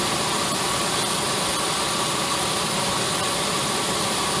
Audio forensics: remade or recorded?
recorded